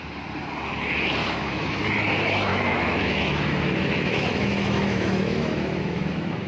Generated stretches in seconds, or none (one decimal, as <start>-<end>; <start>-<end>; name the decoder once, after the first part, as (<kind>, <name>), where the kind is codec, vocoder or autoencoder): 1.2-1.8 (autoencoder, DAC-VAE); 2.5-6.5